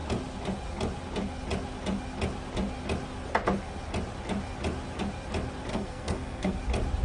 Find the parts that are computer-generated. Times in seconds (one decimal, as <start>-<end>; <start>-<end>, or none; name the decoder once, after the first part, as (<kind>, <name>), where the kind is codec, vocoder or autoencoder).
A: 5.7-6.6 (codec, SNAC)